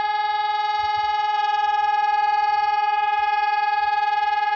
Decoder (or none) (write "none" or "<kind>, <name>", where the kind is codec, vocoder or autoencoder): none